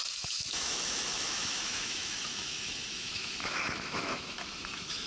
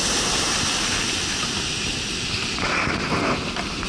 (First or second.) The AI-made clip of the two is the first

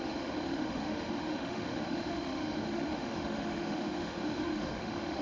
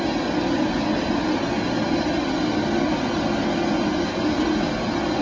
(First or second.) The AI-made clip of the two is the first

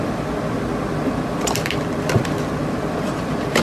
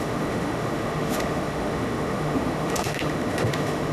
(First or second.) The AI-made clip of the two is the second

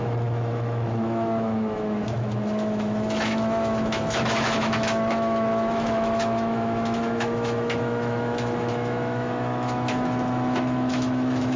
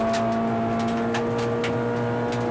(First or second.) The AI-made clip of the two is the first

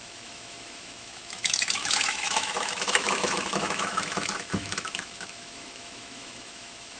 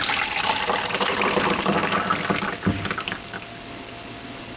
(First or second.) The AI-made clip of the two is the first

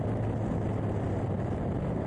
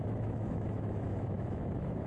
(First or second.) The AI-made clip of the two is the second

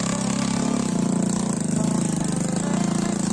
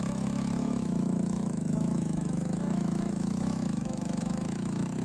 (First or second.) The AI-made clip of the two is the second